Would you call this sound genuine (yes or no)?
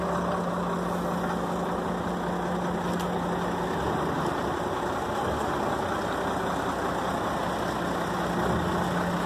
yes